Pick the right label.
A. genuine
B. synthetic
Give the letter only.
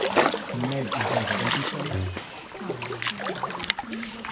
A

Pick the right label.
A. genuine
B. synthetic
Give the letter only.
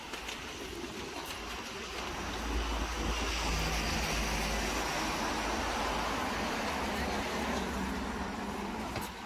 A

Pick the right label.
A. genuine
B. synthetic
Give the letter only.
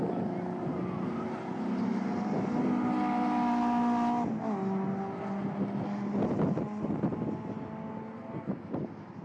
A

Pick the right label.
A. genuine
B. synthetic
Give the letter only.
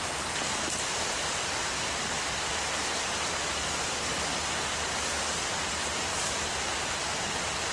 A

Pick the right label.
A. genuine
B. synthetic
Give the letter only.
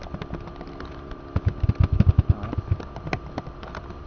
A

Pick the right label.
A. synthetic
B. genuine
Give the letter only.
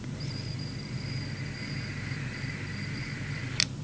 B